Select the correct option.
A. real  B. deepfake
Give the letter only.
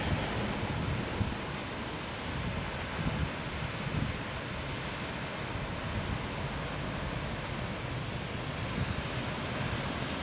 A